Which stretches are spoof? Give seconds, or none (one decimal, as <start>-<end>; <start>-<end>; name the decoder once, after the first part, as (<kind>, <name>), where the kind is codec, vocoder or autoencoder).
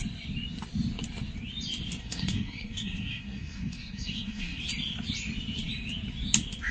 2.0-4.6 (codec, SNAC)